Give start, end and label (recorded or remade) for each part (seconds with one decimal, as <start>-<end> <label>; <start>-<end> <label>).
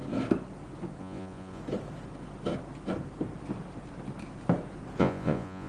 0.0-1.0 recorded; 1.0-1.6 remade; 1.6-5.0 recorded; 5.0-5.7 remade